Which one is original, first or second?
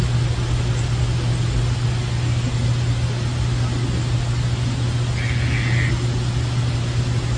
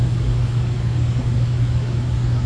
first